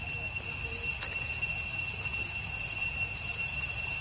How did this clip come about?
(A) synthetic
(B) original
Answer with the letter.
B